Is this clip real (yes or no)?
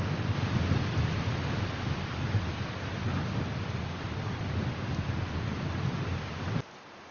yes